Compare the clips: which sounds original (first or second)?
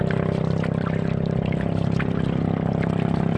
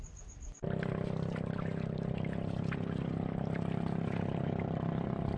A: first